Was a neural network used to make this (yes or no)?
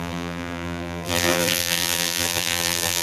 yes